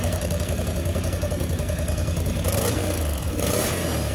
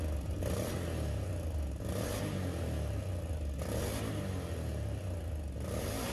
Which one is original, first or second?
second